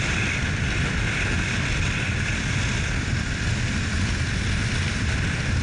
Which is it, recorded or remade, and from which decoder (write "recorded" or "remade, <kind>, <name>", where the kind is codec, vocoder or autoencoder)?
recorded